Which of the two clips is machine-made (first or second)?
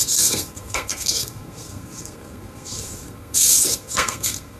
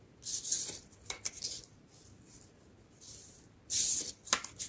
first